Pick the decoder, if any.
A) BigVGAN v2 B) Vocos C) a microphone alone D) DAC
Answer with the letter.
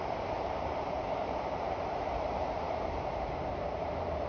A